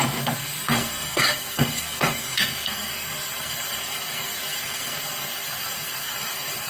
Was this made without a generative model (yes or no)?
no